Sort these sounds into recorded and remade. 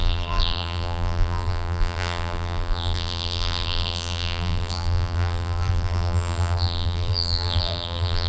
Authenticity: remade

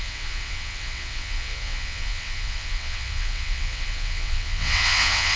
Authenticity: remade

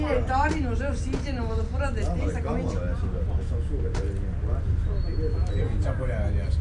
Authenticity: recorded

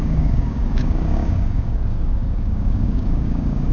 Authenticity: remade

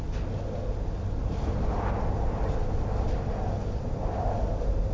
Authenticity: recorded